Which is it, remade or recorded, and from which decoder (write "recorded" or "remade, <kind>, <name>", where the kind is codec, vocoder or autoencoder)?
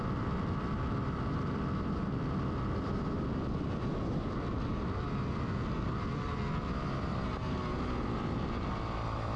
recorded